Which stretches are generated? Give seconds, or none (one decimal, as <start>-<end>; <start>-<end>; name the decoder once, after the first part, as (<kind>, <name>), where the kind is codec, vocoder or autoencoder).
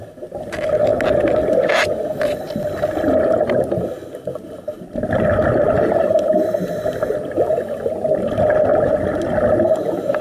none